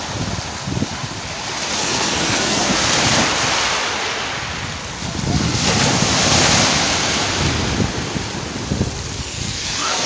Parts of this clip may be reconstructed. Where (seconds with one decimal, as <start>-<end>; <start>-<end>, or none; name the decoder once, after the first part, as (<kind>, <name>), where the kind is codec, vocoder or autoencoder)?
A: 1.8-2.7 (codec, SNAC); 9.2-10.1